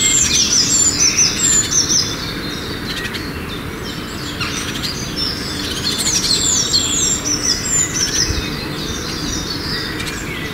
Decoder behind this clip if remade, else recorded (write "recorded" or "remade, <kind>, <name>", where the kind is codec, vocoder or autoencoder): recorded